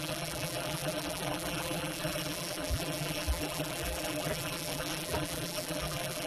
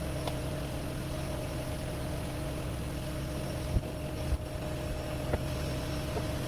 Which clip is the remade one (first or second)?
first